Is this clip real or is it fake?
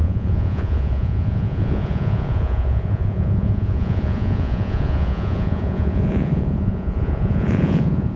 fake